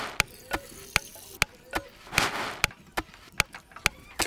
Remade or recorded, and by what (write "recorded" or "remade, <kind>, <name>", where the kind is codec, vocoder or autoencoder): recorded